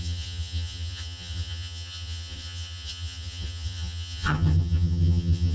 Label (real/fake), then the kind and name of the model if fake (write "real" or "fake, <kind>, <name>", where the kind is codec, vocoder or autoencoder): fake, vocoder, HiFi-GAN